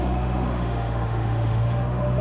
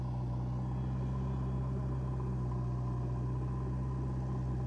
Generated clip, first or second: first